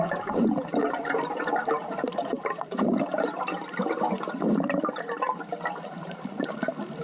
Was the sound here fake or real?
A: fake